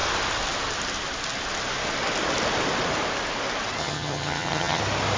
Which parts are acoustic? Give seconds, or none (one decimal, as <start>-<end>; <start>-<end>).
0.0-3.8; 4.8-5.2